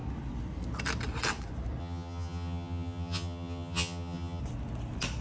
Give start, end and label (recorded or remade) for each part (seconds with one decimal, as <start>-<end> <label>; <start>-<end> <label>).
0.0-1.8 recorded; 1.8-4.4 remade; 4.4-5.2 recorded